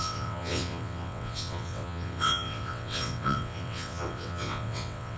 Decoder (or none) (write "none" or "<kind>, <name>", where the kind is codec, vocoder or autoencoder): vocoder, WaveNeXt